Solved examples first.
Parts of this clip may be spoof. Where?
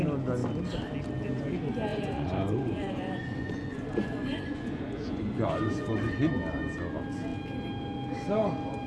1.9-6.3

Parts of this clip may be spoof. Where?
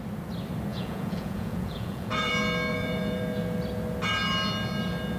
0.7-2.3; 2.7-3.2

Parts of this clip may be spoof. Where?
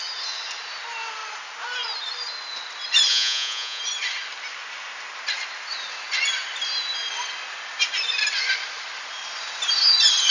3.1-3.8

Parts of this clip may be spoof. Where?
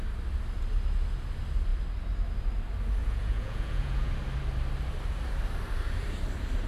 3.0-4.1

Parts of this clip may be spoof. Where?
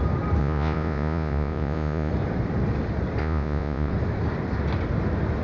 0.4-2.1; 3.2-3.9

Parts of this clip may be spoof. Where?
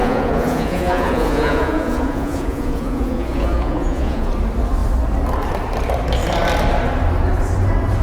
0.0-4.3